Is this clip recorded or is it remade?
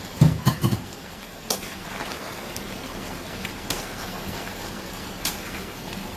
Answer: remade